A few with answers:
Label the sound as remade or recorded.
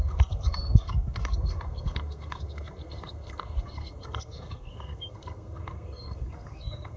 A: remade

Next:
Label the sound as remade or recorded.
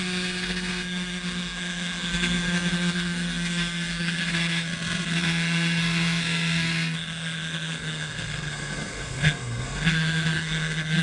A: remade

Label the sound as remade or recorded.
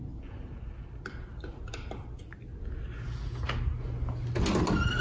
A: recorded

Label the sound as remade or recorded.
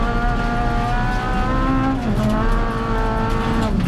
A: recorded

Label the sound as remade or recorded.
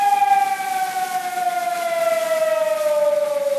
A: recorded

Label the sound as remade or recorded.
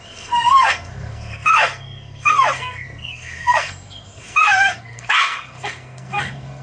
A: remade